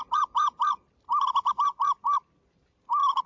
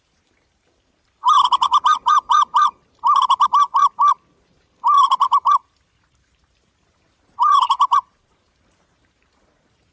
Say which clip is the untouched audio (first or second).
first